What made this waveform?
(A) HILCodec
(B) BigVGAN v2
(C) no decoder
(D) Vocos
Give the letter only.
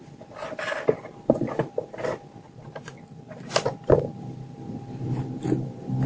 B